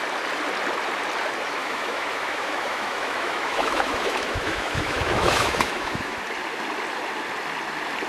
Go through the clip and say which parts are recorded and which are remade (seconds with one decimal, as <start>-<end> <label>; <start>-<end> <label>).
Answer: 0.0-1.6 recorded; 1.6-6.2 remade; 6.2-8.1 recorded